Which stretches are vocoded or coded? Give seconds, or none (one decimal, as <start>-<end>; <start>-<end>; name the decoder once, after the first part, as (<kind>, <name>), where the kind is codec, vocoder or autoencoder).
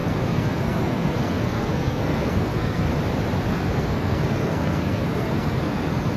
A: 0.0-2.9 (codec, SNAC); 3.5-6.2